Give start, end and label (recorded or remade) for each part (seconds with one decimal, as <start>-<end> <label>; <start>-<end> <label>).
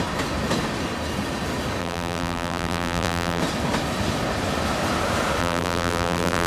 0.0-1.8 recorded; 1.8-3.4 remade; 3.4-5.4 recorded; 5.4-6.5 remade